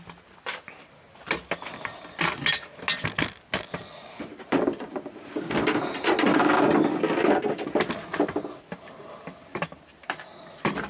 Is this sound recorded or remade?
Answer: recorded